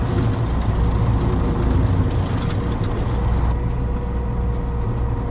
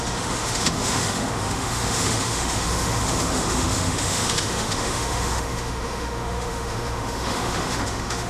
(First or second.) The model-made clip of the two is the second